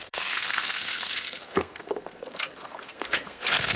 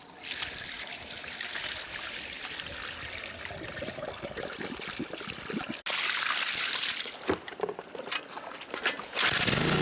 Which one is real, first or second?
second